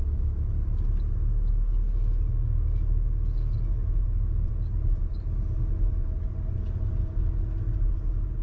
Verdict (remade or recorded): recorded